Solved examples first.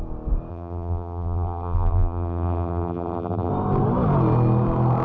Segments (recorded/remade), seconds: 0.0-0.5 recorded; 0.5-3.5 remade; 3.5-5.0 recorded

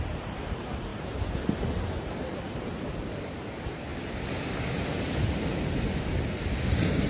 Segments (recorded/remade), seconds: 0.0-0.9 recorded; 0.9-3.5 remade; 3.5-7.1 recorded

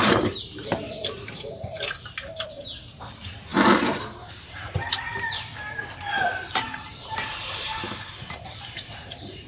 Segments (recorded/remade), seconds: 0.0-5.5 remade; 5.5-6.2 recorded; 6.2-9.5 remade

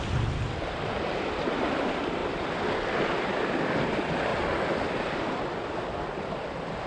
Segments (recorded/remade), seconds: 0.0-4.3 remade; 4.3-4.9 recorded; 4.9-6.9 remade

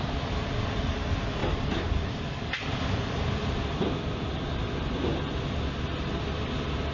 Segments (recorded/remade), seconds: 0.0-1.4 recorded; 1.4-4.3 remade; 4.3-6.9 recorded

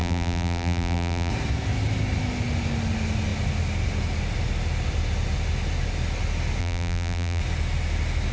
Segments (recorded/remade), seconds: 0.0-1.3 remade; 1.3-6.6 recorded; 6.6-7.4 remade; 7.4-8.3 recorded

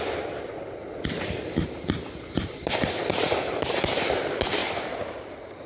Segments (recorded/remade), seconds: 0.0-1.6 recorded; 1.6-3.8 remade; 3.8-4.6 recorded; 4.6-5.7 remade

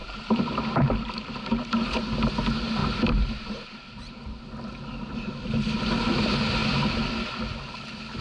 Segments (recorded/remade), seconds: 0.0-2.4 remade; 2.4-2.8 recorded; 2.8-4.2 remade; 4.2-8.2 recorded